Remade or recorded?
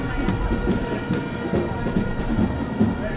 recorded